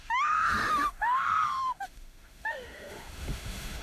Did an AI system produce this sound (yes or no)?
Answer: yes